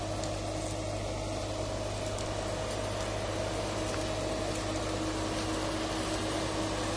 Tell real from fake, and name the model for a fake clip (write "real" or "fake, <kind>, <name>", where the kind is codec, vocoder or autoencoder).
real